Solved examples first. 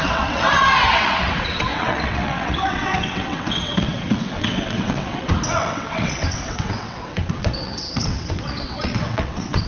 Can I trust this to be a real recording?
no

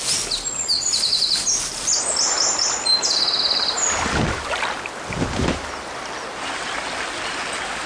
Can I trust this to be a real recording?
yes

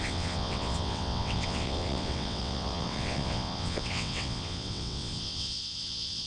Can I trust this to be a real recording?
no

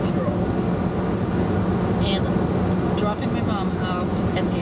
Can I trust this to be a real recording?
yes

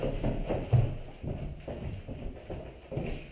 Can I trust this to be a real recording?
yes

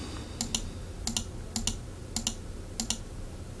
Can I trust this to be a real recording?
yes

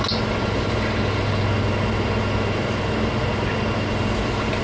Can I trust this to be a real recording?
yes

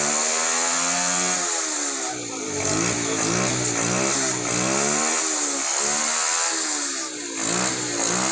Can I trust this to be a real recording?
yes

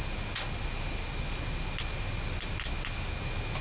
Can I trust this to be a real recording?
yes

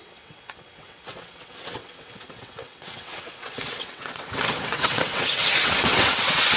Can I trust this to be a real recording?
no